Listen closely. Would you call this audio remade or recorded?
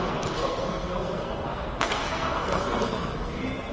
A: remade